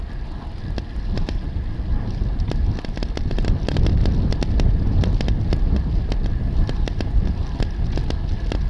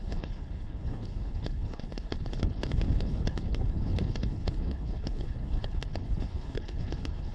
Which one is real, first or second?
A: first